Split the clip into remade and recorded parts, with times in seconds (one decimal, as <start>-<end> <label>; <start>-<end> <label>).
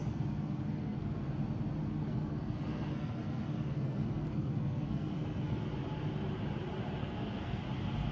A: 0.0-1.3 remade; 1.3-1.8 recorded; 1.8-5.6 remade; 5.6-7.0 recorded; 7.0-7.6 remade; 7.6-8.1 recorded